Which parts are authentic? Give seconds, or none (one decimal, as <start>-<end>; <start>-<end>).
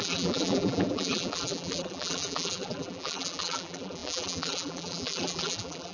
none